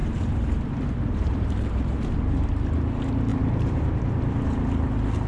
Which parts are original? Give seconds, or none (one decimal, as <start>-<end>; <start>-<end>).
2.5-3.3; 4.0-5.3